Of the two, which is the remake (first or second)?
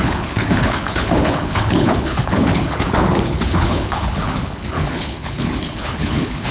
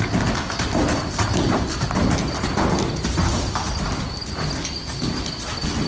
first